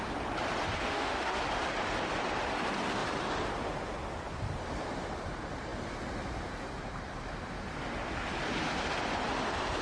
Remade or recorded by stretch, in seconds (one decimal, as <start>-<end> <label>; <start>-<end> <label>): 0.0-0.8 recorded; 0.8-1.4 remade; 1.4-9.8 recorded